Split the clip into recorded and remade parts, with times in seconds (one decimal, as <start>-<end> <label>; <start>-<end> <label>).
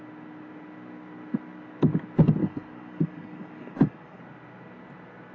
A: 0.0-2.4 recorded; 2.4-4.2 remade; 4.2-5.3 recorded